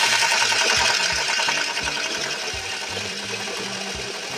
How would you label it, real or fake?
fake